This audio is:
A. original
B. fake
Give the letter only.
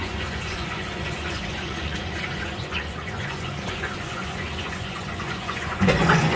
B